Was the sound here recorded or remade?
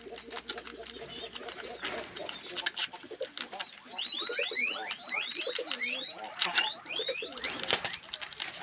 recorded